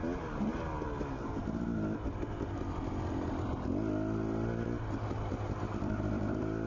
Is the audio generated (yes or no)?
no